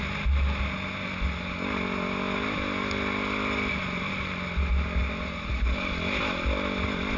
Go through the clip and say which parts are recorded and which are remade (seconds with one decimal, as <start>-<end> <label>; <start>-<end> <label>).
0.0-5.0 recorded; 5.0-5.9 remade; 5.9-7.2 recorded